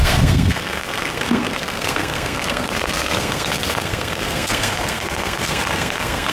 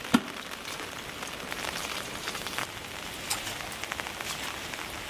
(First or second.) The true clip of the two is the second